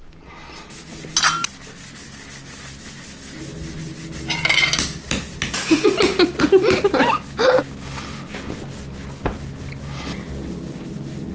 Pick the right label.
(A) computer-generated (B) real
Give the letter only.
B